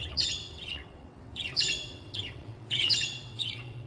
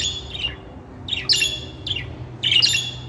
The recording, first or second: second